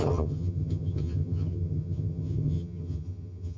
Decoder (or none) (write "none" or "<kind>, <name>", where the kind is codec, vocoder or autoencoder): vocoder, HiFi-GAN